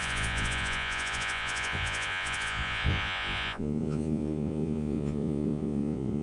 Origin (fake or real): fake